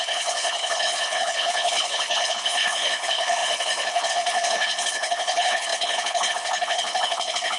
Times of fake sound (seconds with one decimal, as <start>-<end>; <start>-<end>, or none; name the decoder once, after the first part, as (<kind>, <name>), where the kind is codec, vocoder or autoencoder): 0.0-7.6 (codec, HILCodec)

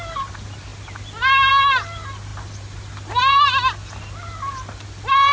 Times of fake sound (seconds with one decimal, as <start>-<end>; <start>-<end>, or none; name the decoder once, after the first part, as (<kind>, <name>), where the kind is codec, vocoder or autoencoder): none